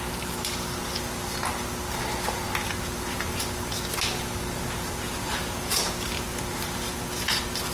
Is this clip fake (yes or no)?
no